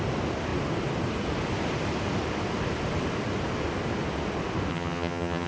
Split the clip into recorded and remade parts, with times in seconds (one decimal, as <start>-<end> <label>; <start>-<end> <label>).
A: 0.0-4.7 recorded; 4.7-5.5 remade

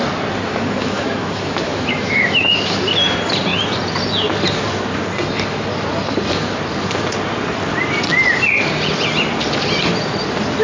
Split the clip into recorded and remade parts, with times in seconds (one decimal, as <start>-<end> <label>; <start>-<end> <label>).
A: 0.0-0.5 recorded; 0.5-2.8 remade; 2.8-10.6 recorded

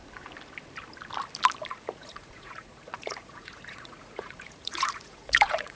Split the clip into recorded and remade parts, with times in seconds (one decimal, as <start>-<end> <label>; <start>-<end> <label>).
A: 0.0-1.7 recorded; 1.7-5.8 remade

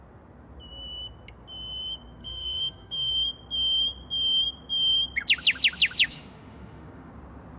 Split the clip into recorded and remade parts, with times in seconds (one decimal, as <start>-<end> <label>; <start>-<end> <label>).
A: 0.0-2.2 recorded; 2.2-3.1 remade; 3.1-6.0 recorded; 6.0-7.1 remade; 7.1-7.6 recorded

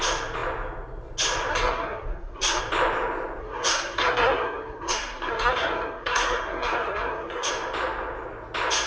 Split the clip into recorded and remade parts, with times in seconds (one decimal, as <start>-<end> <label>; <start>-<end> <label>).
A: 0.0-1.5 recorded; 1.5-2.6 remade; 2.6-3.4 recorded; 3.4-7.5 remade; 7.5-8.9 recorded

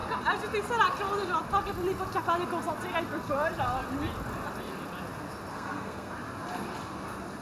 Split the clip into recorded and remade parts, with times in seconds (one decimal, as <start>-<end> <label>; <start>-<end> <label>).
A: 0.0-5.5 recorded; 5.5-6.1 remade; 6.1-7.4 recorded

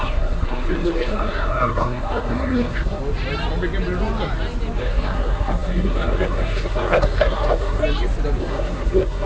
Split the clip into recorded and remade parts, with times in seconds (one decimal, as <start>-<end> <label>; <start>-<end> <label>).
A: 0.0-3.0 remade; 3.0-4.8 recorded; 4.8-7.8 remade; 7.8-8.4 recorded; 8.4-9.3 remade